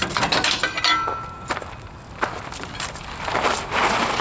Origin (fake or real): real